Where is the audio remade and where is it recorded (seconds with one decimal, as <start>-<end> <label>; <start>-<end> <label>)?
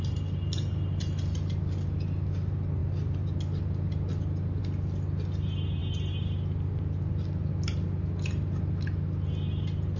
0.0-10.0 recorded